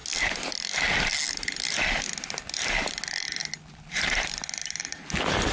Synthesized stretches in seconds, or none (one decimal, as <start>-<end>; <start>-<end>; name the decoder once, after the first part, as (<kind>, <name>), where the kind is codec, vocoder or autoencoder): none